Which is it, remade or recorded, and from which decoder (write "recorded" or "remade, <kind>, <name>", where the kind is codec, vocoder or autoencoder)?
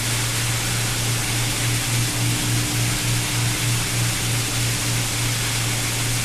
recorded